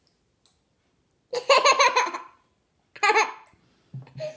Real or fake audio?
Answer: real